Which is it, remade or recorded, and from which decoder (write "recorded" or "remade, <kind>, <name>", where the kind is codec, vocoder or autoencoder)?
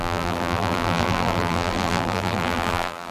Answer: remade, vocoder, BigVGAN v2